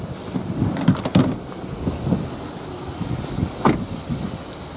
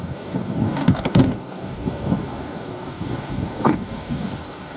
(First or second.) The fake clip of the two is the second